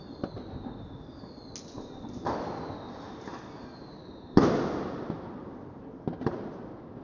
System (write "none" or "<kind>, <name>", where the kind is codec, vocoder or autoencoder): none